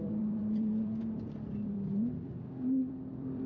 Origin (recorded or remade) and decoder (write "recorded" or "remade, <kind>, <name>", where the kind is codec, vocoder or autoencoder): remade, vocoder, BigVGAN v2